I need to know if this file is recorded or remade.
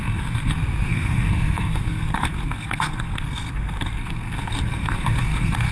remade